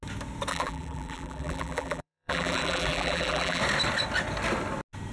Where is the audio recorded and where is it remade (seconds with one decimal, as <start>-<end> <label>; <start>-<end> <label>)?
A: 0.0-0.5 recorded; 0.5-3.6 remade; 3.6-5.1 recorded